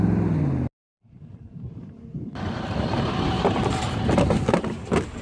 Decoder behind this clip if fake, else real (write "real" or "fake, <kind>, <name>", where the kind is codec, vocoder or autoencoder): real